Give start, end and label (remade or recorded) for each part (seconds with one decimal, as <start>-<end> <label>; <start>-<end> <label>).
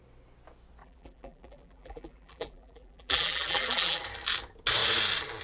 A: 0.0-0.8 recorded; 0.8-4.0 remade; 4.0-5.4 recorded